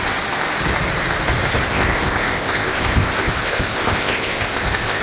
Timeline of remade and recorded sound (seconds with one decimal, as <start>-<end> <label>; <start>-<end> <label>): 0.0-1.7 recorded; 1.7-5.0 remade